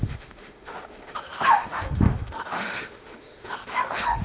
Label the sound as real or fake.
fake